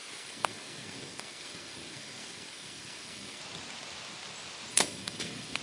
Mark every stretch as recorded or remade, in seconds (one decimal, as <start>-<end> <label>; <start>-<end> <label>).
0.0-3.4 remade; 3.4-4.7 recorded; 4.7-5.6 remade